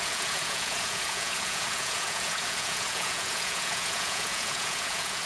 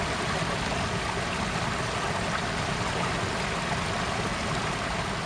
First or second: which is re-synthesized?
first